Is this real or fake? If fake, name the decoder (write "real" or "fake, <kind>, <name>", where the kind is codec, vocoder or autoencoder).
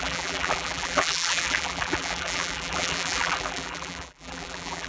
fake, vocoder, BigVGAN v2